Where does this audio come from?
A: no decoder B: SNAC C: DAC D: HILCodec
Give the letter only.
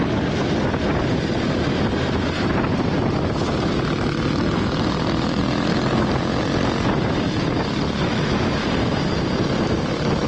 A